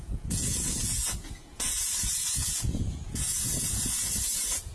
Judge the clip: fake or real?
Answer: fake